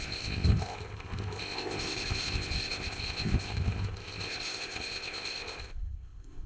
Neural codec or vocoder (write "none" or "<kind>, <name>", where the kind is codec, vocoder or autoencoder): codec, ZipCodec